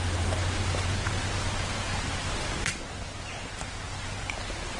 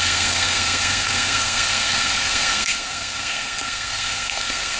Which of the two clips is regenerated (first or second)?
second